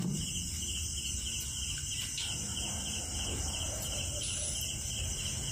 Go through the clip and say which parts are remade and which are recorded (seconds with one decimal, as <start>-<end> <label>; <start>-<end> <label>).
0.0-2.5 recorded; 2.5-5.5 remade